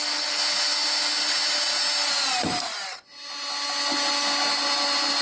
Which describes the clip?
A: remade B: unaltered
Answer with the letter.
B